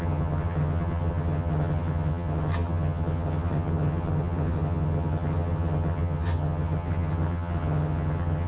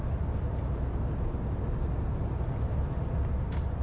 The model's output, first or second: first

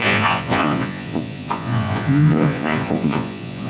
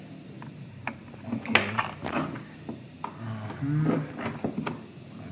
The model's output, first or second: first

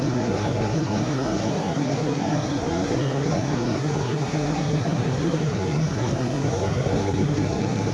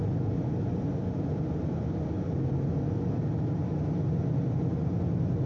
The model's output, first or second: first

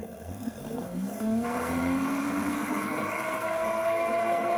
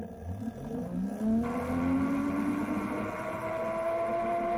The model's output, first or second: first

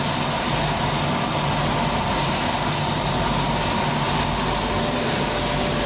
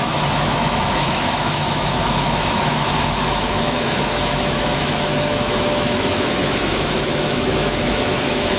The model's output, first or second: second